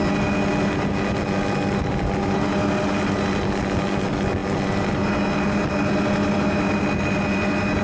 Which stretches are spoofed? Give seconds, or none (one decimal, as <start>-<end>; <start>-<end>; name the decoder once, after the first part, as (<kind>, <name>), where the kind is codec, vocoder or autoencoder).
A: none